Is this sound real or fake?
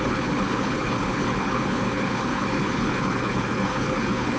fake